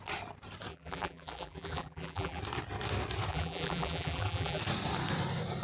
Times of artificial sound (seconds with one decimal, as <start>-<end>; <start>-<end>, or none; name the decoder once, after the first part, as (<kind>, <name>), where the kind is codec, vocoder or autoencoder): 0.7-2.4 (vocoder, BigVGAN v2); 3.3-4.6